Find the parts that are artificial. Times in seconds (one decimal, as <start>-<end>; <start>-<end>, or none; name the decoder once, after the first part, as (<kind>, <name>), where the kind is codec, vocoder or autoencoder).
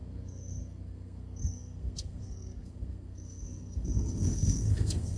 0.0-5.2 (codec, SNAC)